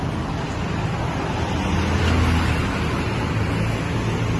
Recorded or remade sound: recorded